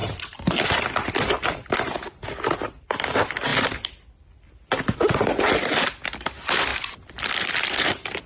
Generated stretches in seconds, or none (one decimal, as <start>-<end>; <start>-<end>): 0.0-3.5; 5.4-8.3